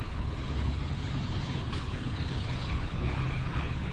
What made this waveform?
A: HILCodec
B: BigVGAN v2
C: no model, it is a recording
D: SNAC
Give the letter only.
A